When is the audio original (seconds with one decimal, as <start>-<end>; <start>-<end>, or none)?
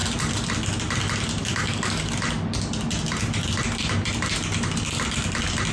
0.0-1.4; 2.1-5.7